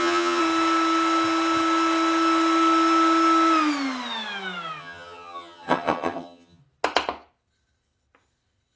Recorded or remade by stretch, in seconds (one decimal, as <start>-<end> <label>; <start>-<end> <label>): 0.0-0.4 remade; 0.4-4.8 recorded; 4.8-6.6 remade; 6.6-8.8 recorded